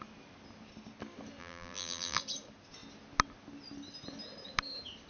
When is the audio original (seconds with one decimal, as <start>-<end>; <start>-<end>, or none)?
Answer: 0.0-1.4; 2.2-5.1